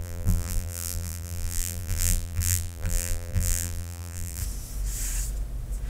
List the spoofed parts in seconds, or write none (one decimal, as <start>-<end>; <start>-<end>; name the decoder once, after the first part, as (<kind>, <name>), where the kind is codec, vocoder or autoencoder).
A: 0.0-4.4 (vocoder, BigVGAN v2)